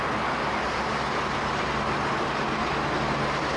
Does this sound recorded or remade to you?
recorded